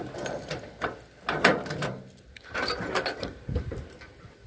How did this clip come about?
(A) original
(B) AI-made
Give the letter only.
A